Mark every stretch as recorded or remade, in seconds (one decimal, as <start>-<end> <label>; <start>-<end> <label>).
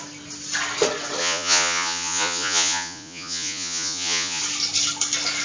0.0-1.2 recorded; 1.2-4.4 remade; 4.4-5.4 recorded